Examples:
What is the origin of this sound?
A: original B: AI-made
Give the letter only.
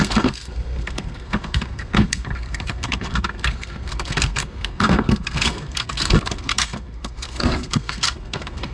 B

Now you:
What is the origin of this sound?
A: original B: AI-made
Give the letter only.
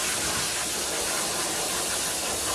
A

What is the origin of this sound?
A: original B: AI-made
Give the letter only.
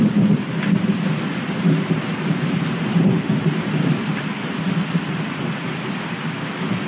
A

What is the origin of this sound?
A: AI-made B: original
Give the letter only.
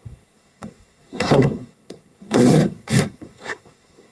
A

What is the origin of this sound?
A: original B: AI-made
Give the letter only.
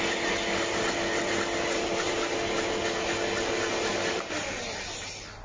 A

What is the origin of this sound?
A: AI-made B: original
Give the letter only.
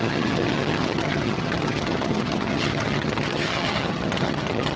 A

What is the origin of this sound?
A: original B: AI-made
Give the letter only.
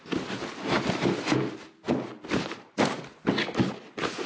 A